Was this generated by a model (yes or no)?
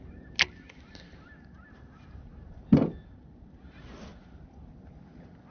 no